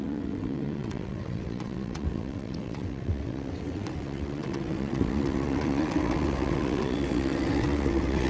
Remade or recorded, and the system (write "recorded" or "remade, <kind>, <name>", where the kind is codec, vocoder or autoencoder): remade, vocoder, WaveNeXt